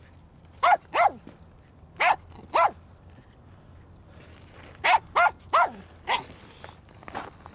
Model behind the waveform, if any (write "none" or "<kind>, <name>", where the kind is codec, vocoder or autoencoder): none